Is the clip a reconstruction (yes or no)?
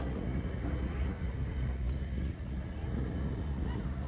yes